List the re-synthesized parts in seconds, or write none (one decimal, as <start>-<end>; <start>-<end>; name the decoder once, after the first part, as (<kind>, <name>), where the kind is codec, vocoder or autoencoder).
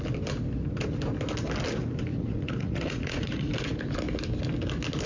2.1-3.5 (vocoder, Vocos)